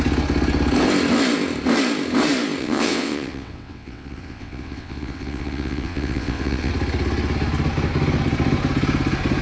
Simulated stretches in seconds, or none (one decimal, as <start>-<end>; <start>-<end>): 2.6-6.7